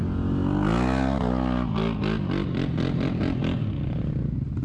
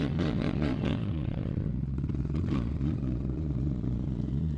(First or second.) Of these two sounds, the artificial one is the second